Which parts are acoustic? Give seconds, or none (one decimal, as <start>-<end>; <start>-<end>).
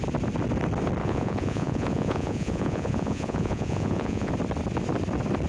0.0-1.0; 4.3-5.5